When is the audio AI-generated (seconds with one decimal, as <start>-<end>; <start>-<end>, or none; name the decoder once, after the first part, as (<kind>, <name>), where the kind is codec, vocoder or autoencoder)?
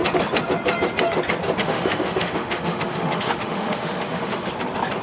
1.6-4.5 (autoencoder, DAC-VAE)